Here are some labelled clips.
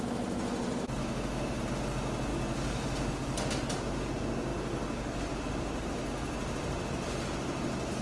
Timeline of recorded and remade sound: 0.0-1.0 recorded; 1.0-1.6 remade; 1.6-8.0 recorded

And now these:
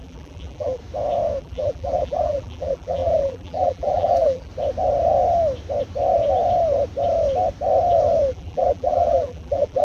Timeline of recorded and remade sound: 0.0-0.8 remade; 0.8-1.4 recorded; 1.4-4.5 remade; 4.5-8.3 recorded; 8.3-9.8 remade

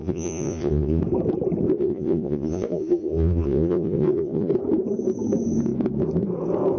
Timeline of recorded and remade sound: 0.0-1.0 remade; 1.0-1.8 recorded; 1.8-4.5 remade; 4.5-6.8 recorded

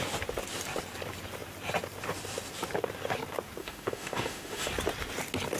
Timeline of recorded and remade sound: 0.0-3.6 recorded; 3.6-4.7 remade; 4.7-5.6 recorded

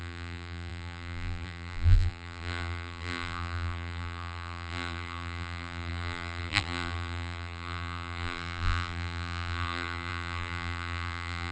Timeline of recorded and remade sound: 0.0-11.5 remade